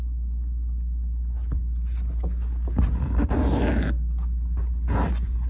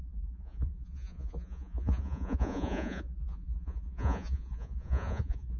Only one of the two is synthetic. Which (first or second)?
second